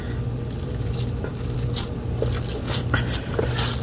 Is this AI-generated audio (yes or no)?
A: no